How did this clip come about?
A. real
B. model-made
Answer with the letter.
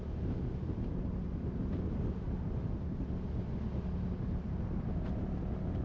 A